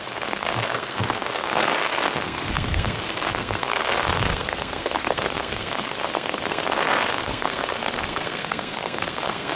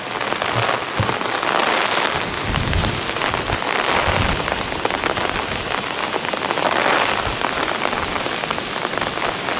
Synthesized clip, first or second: first